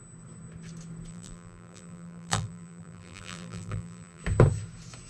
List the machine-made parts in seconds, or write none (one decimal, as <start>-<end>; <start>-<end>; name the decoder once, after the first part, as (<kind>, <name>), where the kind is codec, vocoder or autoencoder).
1.1-4.2 (vocoder, BigVGAN v2)